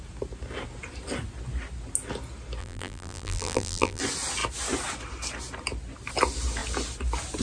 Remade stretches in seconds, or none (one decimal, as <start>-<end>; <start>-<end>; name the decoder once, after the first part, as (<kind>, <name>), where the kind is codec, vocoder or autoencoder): 2.6-4.0 (vocoder, BigVGAN v2)